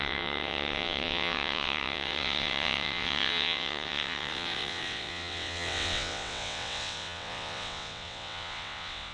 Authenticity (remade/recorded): remade